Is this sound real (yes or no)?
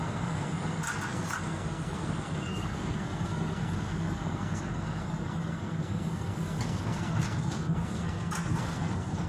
no